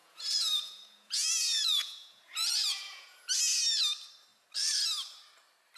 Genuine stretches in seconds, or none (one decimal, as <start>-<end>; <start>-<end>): 3.3-5.8